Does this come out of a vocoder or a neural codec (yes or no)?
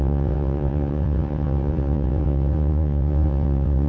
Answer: yes